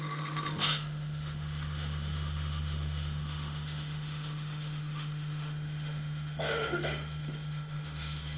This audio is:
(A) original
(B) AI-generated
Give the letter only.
B